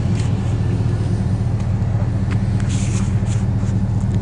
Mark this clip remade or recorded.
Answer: recorded